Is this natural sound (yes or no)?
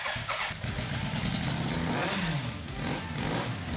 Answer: yes